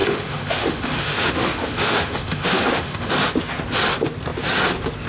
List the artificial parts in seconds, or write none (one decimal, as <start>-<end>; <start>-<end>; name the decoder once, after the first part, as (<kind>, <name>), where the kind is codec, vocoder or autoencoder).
0.0-3.1 (autoencoder, DAC-VAE)